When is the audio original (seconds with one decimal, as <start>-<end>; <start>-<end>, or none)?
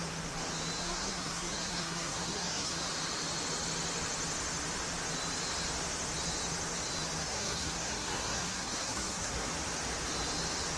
0.0-0.8; 2.8-7.2; 9.5-10.8